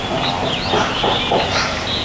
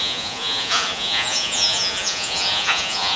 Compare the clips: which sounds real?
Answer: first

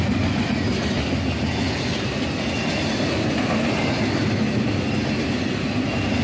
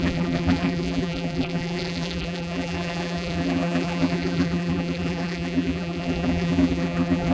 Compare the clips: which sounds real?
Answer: first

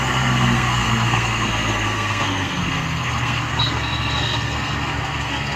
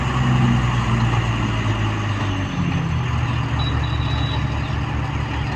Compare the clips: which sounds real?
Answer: second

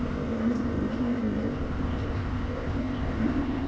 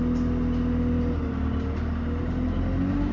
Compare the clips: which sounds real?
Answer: second